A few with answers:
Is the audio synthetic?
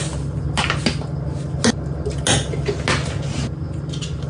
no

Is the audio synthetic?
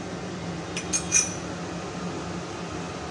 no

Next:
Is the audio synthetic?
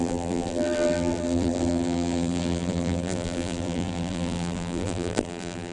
yes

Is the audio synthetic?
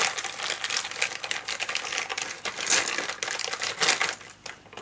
no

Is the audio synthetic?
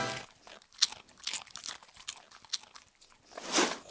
no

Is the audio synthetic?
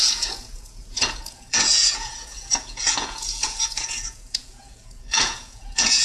yes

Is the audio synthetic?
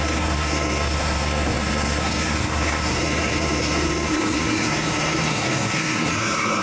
yes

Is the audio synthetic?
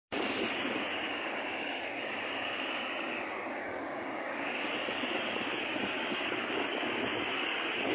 yes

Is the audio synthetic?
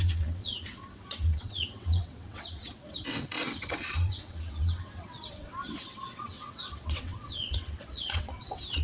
yes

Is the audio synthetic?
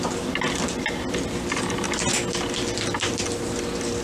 no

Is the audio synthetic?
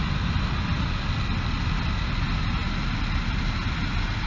no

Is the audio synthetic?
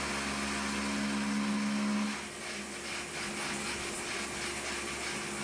no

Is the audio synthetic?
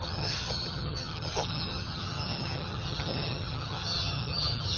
yes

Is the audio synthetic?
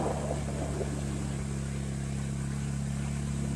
no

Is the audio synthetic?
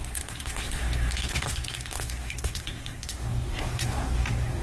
yes